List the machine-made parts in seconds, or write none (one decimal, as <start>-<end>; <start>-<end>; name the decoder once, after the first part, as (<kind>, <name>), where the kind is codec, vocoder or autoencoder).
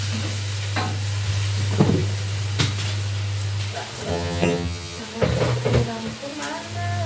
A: 4.1-5.0 (vocoder, HiFi-GAN)